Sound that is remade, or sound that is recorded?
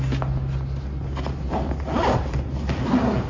recorded